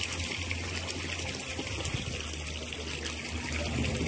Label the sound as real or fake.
real